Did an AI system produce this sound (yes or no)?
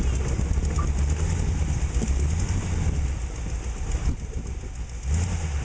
no